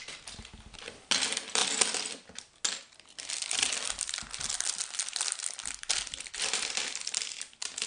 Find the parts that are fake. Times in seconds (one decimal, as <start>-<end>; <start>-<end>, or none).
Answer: none